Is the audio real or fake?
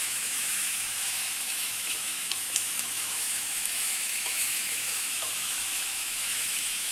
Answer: fake